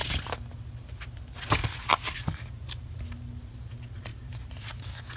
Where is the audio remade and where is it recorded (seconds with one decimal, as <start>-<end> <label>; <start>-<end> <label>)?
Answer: 0.0-4.1 recorded; 4.1-4.8 remade; 4.8-5.2 recorded